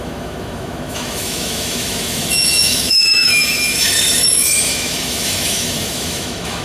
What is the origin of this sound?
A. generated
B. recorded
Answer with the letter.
A